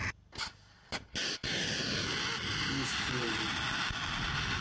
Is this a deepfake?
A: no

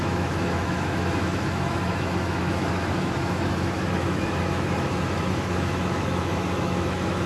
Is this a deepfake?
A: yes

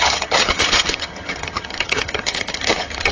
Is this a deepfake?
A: yes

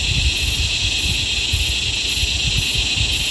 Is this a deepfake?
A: no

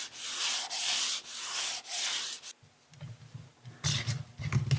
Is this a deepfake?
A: no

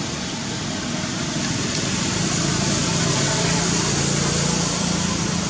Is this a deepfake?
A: no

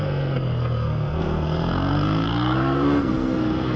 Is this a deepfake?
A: yes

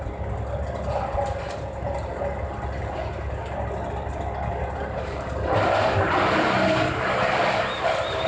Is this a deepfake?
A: no